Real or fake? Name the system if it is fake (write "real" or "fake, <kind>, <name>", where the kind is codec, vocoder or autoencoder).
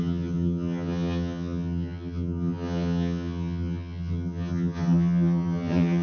fake, vocoder, HiFi-GAN